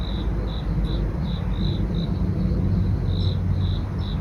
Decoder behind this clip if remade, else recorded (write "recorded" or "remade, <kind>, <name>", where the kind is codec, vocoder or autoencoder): recorded